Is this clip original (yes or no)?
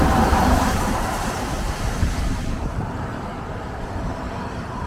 no